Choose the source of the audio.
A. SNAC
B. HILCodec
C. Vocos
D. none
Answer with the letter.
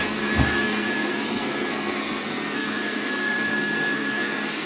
A